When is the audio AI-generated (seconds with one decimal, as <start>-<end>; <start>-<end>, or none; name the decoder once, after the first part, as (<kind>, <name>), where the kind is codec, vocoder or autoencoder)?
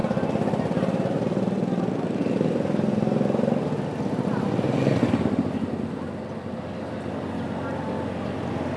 none